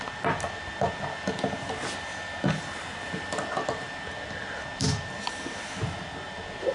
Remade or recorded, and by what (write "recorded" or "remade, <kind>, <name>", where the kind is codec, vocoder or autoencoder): recorded